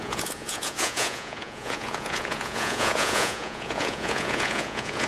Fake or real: fake